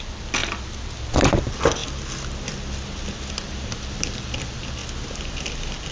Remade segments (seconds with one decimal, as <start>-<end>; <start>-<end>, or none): 0.0-0.4; 1.3-1.8; 3.3-4.8